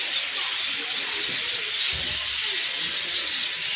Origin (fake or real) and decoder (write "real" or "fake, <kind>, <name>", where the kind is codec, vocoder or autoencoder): real